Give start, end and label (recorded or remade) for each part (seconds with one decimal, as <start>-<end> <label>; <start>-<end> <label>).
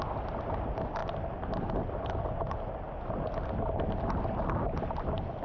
0.0-5.4 recorded